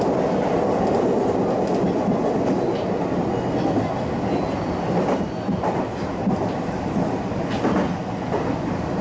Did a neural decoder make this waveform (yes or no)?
no